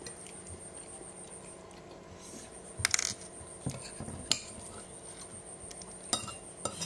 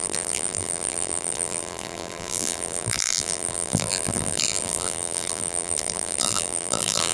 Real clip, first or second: first